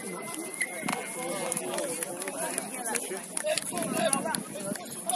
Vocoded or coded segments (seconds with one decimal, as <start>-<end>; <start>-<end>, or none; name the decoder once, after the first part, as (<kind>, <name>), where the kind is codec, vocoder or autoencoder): none